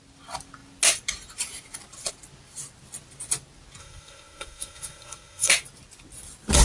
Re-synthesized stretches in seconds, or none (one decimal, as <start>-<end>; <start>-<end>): 3.8-5.5